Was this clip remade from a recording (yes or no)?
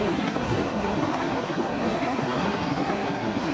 yes